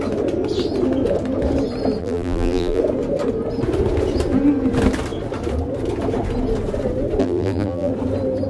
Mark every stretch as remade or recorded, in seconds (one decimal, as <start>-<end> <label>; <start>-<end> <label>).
0.0-2.0 recorded; 2.0-2.8 remade; 2.8-7.2 recorded; 7.2-7.9 remade; 7.9-8.5 recorded